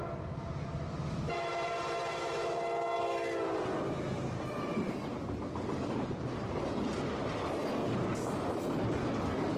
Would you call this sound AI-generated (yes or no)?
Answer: no